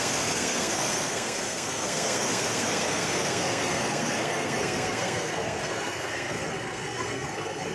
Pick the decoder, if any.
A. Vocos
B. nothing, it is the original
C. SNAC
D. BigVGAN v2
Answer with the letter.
C